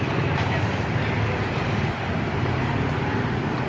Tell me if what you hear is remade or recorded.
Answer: recorded